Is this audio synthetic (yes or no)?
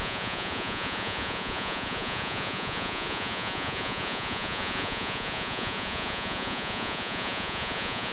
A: yes